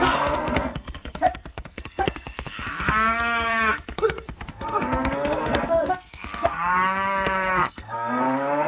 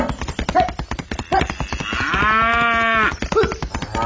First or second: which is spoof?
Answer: first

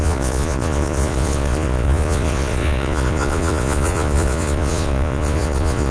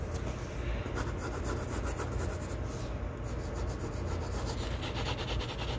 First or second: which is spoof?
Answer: first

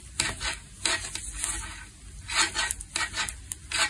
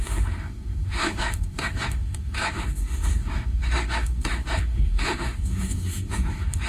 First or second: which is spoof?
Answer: second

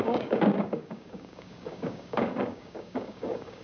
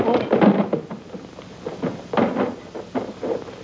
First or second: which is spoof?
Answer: first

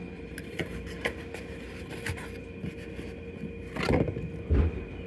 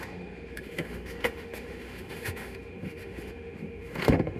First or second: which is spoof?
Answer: second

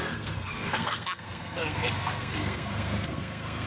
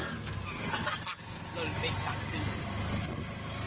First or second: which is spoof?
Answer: first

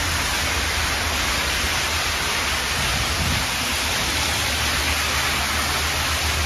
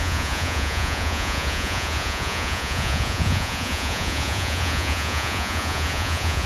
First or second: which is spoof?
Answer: second